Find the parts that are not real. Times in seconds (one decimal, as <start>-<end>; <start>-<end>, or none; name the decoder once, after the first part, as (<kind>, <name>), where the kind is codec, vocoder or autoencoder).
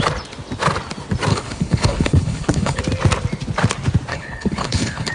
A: 1.3-2.8 (codec, HILCodec); 4.1-5.1